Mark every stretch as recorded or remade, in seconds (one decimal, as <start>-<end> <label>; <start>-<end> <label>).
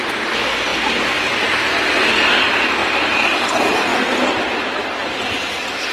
0.0-5.9 recorded